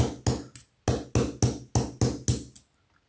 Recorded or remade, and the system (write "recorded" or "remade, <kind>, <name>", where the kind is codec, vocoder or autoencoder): recorded